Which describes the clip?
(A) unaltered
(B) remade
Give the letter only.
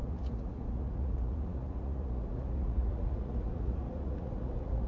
B